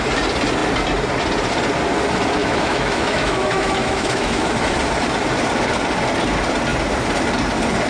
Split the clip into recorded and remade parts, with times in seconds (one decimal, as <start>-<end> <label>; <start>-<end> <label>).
0.0-2.4 recorded; 2.4-4.5 remade; 4.5-7.9 recorded

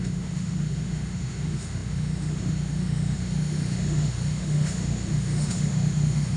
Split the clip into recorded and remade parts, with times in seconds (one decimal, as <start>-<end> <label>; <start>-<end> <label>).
0.0-6.4 remade

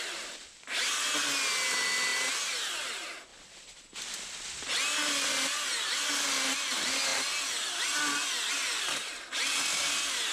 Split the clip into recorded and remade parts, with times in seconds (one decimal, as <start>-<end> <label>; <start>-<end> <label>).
0.0-10.3 recorded

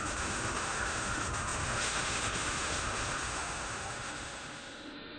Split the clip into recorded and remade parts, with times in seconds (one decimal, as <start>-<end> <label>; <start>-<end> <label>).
0.0-5.2 remade